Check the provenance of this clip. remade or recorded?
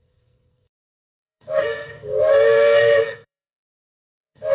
remade